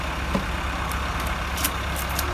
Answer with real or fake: real